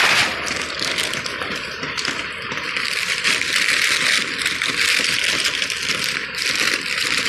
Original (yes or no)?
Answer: no